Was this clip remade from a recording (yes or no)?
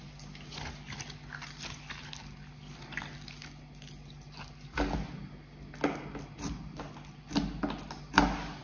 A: no